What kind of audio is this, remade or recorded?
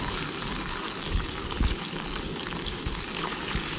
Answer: remade